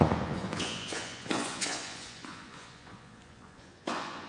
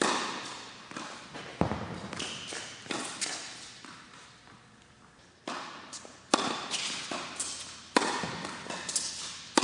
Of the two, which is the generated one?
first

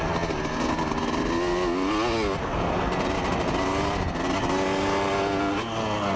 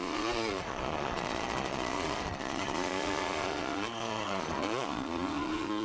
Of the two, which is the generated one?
second